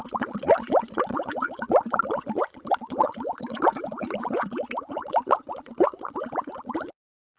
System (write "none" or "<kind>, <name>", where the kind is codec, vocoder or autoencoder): vocoder, Vocos